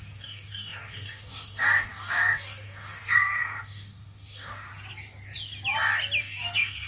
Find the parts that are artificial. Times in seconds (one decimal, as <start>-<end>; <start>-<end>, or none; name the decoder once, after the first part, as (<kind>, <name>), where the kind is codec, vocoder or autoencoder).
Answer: 0.0-4.7 (codec, DAC); 6.2-6.9